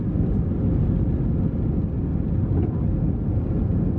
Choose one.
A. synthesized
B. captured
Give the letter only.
B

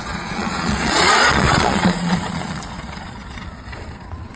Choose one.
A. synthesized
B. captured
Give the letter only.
A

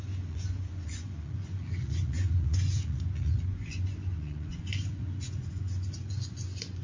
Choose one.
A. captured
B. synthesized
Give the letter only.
B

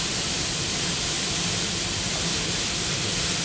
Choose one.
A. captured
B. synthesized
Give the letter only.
B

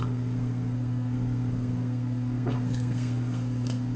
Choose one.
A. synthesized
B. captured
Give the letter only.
A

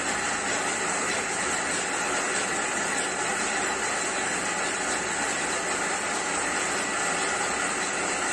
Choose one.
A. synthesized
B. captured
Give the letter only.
B